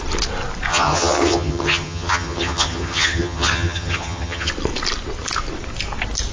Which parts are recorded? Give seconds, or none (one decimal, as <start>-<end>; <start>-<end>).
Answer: 0.0-0.7; 4.5-6.3